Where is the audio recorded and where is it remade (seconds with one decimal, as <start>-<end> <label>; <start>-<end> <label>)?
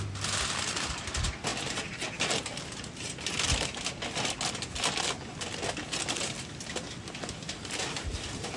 0.0-8.6 recorded